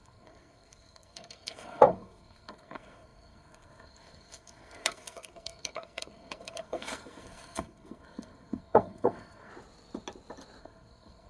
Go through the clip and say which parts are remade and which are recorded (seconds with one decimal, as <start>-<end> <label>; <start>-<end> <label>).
0.0-9.5 remade; 9.5-10.6 recorded; 10.6-11.3 remade